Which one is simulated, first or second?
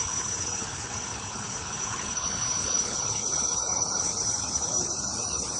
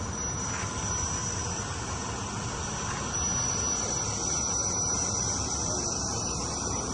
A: first